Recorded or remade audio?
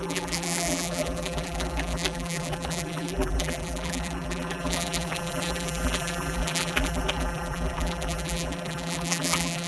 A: remade